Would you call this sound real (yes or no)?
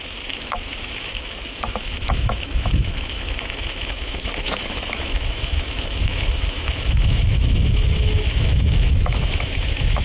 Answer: no